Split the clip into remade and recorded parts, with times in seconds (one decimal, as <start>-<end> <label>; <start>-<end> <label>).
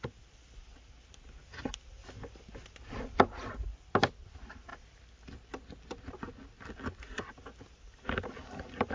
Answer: 0.0-8.9 recorded